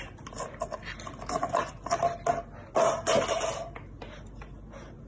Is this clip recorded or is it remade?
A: recorded